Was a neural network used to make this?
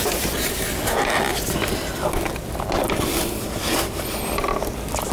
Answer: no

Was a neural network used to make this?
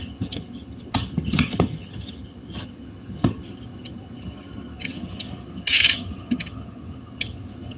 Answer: yes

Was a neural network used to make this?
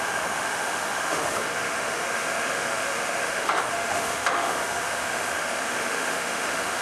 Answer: yes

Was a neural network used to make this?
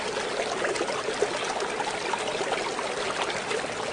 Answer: no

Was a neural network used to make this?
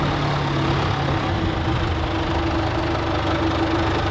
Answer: no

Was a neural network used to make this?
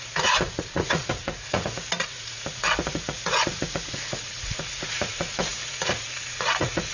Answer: yes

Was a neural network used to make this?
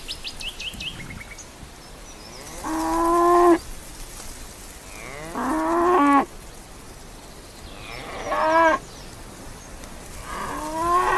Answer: no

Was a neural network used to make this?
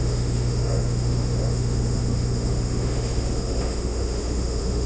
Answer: yes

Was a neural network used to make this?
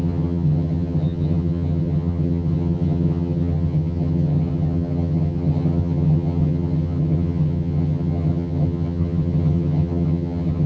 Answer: yes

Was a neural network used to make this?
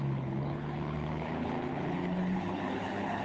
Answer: yes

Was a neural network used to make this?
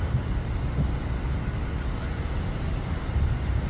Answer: no